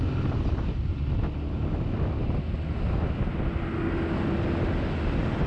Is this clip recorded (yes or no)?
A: yes